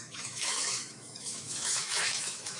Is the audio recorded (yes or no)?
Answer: no